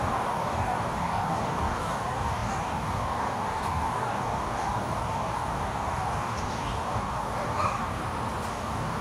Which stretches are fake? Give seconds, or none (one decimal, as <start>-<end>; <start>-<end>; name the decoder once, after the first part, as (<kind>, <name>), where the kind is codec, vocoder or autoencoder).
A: 0.0-8.0 (codec, DAC); 8.5-9.0